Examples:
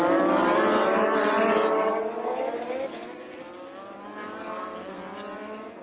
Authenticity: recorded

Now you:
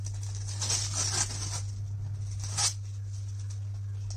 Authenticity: recorded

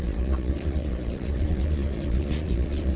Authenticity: remade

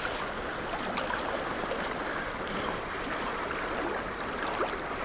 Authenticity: remade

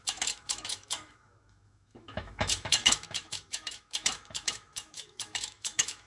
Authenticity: remade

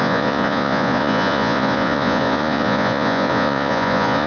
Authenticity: remade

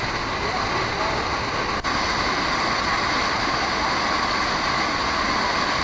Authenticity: recorded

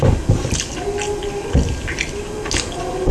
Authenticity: recorded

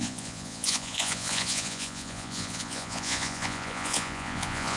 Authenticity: remade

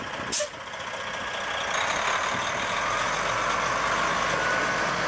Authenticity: recorded